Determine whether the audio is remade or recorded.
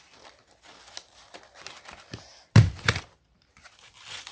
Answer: recorded